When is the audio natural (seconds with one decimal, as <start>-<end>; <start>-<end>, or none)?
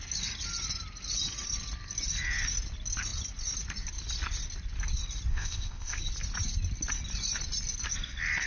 0.0-5.3; 6.0-8.5